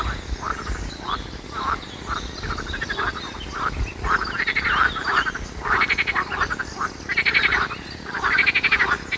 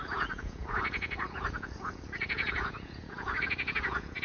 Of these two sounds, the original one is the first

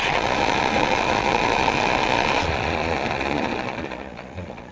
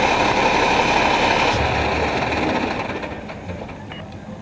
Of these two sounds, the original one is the second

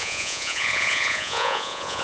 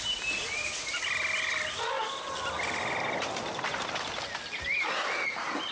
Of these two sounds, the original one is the second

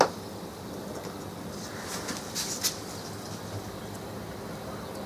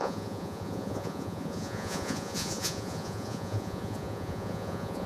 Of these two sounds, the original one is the first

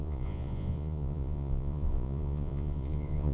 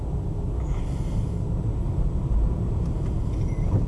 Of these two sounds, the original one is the second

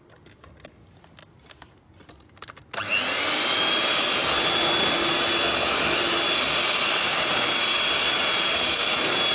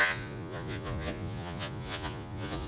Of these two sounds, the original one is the first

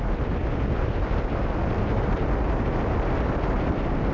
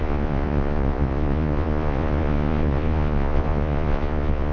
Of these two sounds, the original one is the first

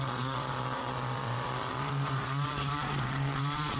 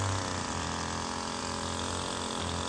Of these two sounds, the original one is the second